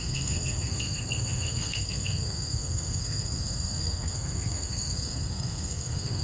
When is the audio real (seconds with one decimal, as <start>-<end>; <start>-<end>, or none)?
none

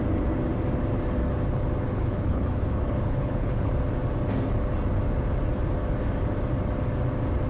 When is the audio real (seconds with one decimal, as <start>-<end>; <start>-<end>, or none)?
0.0-1.9; 3.7-7.5

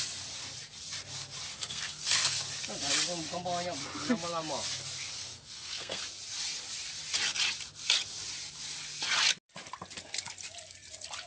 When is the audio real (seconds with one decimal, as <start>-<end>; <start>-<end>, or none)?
0.0-1.5; 2.4-5.2; 6.0-11.3

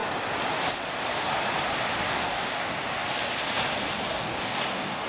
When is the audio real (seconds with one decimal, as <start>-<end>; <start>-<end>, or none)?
0.0-2.0; 2.6-4.1

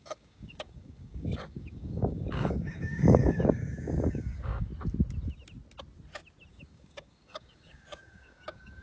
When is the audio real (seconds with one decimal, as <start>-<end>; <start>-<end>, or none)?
4.7-6.5